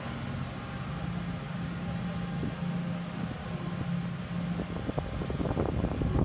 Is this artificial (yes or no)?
no